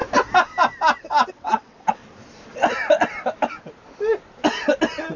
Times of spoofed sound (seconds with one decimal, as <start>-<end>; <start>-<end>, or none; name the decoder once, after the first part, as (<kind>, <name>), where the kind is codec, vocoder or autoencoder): 1.3-2.0 (vocoder, WaveNeXt)